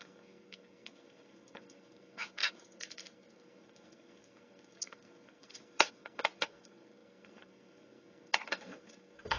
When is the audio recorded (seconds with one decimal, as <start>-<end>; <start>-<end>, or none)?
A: none